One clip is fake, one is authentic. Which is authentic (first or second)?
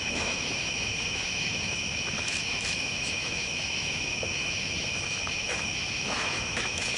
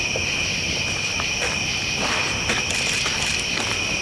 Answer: second